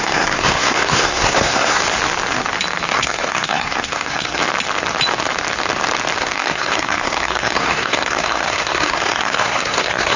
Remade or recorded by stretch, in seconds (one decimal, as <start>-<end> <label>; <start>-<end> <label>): 0.0-1.8 remade; 1.8-2.9 recorded; 2.9-4.4 remade; 4.4-6.2 recorded; 6.2-10.2 remade